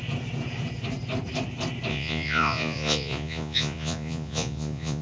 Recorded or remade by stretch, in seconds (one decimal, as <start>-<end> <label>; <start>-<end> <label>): 0.0-1.9 recorded; 1.9-5.0 remade